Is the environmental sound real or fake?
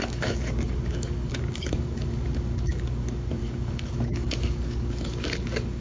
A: fake